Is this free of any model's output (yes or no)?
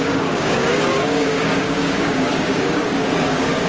no